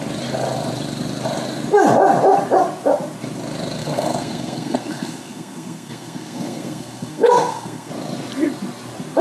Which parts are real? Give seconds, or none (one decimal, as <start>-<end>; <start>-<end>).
0.0-3.8; 7.9-9.2